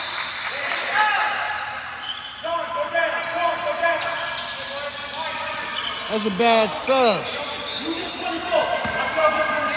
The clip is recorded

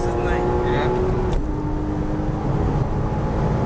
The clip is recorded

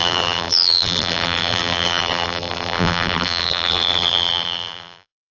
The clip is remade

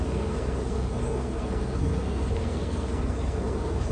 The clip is remade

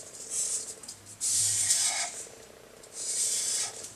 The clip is remade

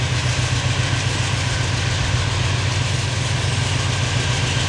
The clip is recorded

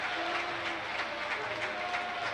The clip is recorded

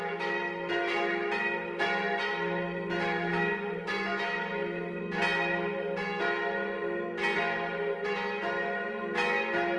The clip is recorded